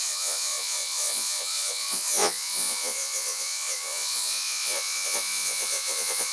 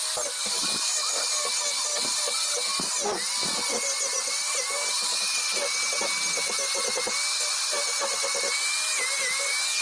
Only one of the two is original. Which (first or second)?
second